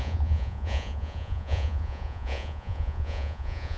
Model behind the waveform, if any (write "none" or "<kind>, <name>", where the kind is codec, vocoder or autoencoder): vocoder, Vocos